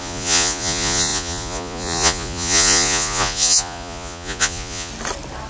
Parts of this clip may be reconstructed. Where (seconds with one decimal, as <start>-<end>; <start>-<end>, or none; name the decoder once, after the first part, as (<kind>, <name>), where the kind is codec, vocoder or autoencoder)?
0.0-4.9 (vocoder, Vocos)